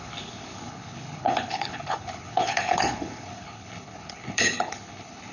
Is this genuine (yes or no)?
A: no